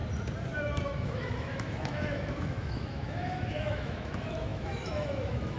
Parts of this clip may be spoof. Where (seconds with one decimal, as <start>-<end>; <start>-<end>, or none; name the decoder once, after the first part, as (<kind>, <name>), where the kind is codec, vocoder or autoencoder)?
0.6-5.6 (autoencoder, DAC-VAE)